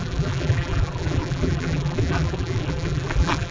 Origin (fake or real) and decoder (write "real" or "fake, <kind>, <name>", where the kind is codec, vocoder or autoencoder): fake, vocoder, BigVGAN v2